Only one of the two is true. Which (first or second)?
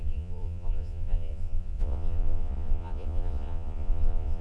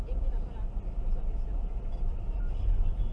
second